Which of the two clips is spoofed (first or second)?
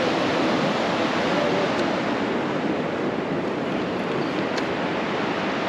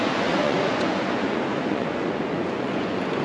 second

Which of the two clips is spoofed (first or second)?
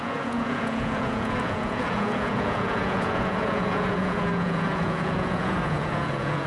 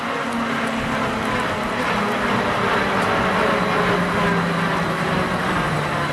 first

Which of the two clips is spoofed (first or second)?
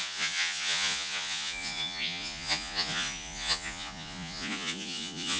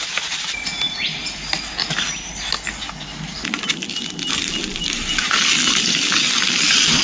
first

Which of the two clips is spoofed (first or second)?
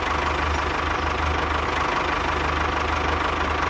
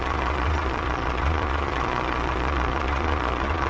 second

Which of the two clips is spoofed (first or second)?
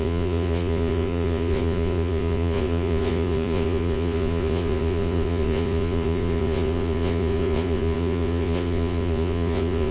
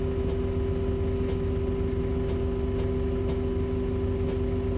first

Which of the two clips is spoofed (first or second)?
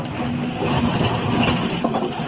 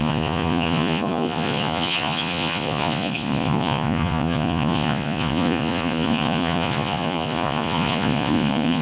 second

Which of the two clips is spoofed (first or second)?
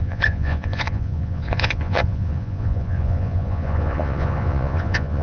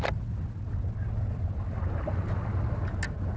first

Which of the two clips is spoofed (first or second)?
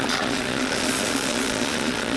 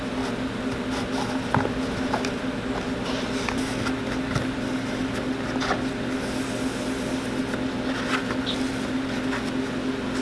first